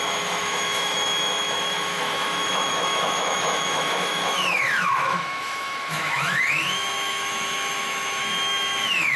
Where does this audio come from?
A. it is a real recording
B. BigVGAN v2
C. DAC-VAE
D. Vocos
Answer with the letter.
C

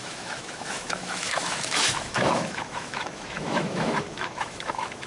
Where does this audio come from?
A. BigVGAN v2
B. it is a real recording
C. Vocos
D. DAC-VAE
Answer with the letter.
D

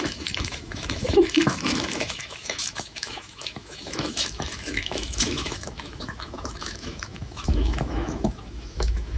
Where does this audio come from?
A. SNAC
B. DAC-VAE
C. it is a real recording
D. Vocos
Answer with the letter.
B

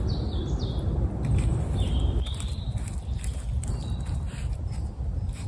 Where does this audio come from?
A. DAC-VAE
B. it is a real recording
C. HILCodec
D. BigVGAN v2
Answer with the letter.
B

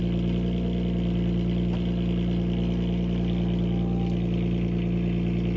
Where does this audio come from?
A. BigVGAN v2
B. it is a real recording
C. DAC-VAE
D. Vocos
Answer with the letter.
B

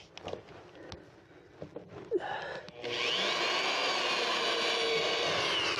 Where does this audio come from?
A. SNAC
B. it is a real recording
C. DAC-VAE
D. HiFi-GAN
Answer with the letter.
B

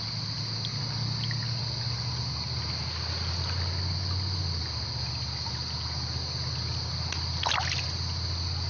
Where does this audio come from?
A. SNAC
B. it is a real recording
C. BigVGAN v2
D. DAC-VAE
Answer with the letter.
B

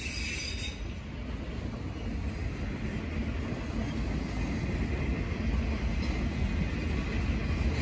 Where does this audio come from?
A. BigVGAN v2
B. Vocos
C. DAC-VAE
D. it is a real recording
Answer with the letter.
D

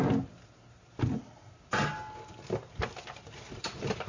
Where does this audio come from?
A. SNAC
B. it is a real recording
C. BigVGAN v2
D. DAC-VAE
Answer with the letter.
B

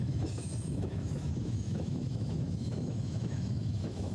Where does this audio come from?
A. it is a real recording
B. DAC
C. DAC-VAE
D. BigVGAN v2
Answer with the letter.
C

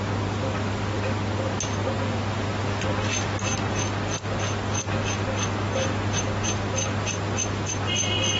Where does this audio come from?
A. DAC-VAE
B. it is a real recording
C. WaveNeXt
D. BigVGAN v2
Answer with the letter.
B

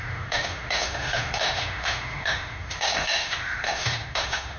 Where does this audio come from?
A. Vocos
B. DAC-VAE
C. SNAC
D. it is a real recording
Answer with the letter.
B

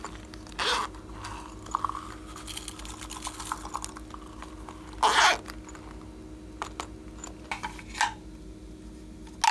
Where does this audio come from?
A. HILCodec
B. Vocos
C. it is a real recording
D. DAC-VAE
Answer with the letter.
C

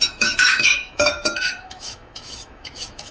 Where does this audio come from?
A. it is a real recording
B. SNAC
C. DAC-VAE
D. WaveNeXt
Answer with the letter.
C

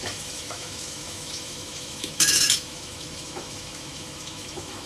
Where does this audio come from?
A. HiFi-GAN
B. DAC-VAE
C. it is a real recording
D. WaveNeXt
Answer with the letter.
B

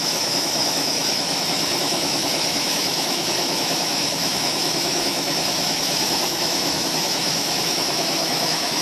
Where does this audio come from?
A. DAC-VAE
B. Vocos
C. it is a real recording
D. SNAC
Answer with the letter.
A